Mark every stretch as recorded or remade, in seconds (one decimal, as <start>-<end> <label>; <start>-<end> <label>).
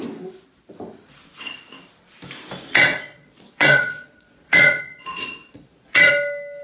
0.0-2.9 recorded; 2.9-6.1 remade; 6.1-6.6 recorded